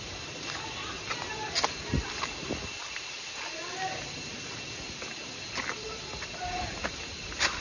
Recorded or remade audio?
recorded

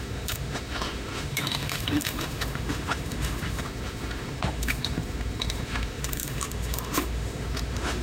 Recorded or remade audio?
remade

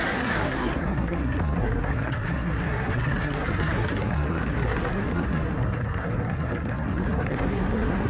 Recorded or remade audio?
remade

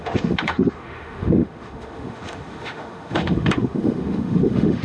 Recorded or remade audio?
remade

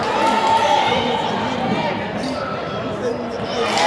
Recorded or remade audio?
recorded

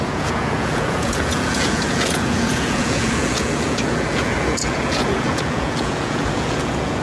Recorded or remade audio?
remade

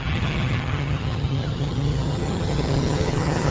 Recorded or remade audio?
remade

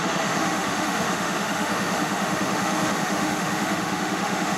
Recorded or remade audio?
remade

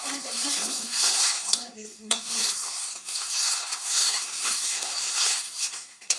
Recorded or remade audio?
remade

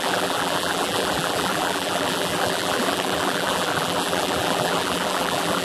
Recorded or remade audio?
remade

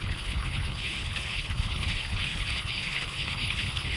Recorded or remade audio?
remade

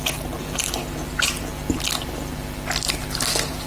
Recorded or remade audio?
recorded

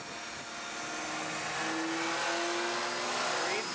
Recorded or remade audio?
recorded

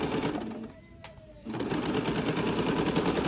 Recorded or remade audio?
recorded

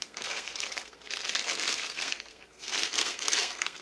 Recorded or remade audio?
remade